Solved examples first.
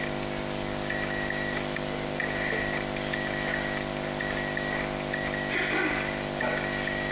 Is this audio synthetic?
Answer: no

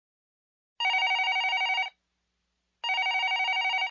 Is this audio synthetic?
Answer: no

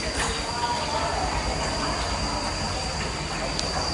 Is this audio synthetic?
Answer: no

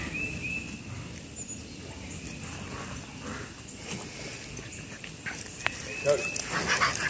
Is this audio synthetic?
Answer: no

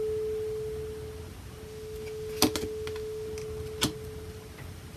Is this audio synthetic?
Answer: no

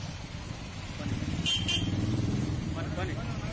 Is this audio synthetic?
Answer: no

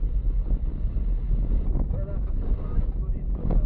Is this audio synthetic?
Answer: no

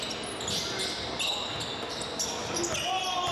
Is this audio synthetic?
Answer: no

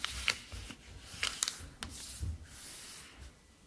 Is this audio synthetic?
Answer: no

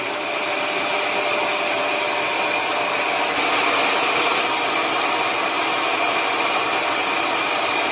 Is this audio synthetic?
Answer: no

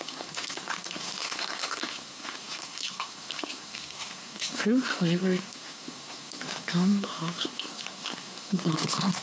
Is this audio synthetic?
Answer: yes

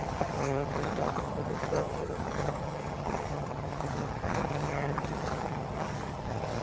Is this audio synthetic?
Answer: yes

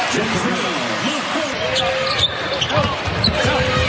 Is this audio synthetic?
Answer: no